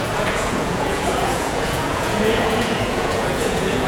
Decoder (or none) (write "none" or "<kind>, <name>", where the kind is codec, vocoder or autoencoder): vocoder, Vocos